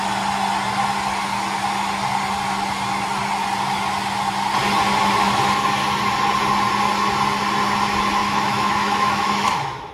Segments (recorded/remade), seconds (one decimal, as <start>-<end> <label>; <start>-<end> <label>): 0.0-8.2 recorded; 8.2-9.9 remade

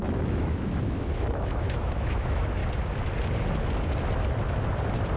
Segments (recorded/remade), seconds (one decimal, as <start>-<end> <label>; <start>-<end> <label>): 0.0-2.6 remade; 2.6-5.2 recorded

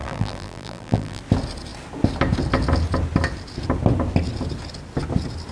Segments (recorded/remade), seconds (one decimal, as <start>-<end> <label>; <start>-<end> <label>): 0.0-1.2 remade; 1.2-5.5 recorded

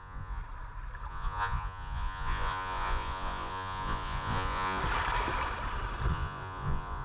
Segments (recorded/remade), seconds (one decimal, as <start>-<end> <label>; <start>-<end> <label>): 0.0-0.4 remade; 0.4-1.1 recorded; 1.1-4.8 remade; 4.8-6.1 recorded; 6.1-7.0 remade

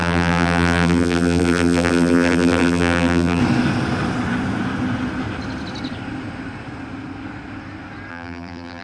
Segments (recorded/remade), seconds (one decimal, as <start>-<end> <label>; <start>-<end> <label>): 0.0-3.4 remade; 3.4-8.1 recorded; 8.1-8.8 remade